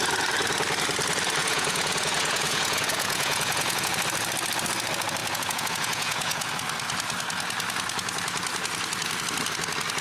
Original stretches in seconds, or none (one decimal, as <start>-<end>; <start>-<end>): 0.0-1.4; 3.9-5.2; 6.5-10.0